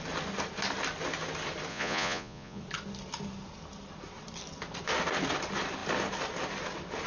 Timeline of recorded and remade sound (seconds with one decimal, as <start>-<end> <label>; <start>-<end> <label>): 0.0-1.7 recorded; 1.7-2.6 remade; 2.6-7.1 recorded